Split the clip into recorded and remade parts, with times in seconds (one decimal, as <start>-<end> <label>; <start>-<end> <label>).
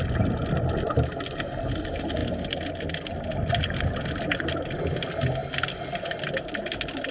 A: 0.0-7.1 recorded